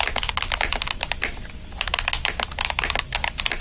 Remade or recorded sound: recorded